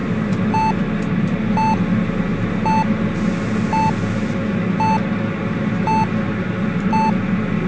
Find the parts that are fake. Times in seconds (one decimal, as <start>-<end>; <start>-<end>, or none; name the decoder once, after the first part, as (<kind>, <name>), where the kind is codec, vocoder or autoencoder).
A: none